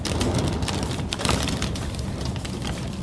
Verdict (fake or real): fake